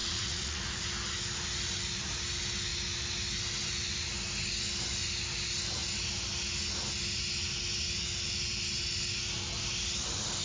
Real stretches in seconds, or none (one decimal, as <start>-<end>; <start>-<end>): 0.8-10.4